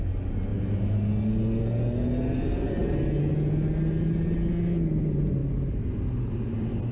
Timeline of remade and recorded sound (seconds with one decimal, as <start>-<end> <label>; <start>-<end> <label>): 0.0-0.5 recorded; 0.5-1.1 remade; 1.1-6.9 recorded